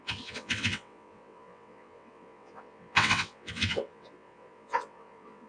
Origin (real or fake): fake